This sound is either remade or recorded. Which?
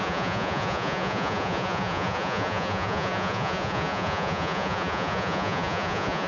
remade